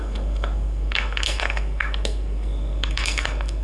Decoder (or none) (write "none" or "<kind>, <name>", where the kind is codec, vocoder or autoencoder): codec, SNAC